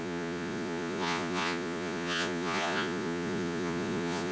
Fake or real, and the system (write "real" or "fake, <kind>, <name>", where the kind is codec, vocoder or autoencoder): fake, vocoder, Vocos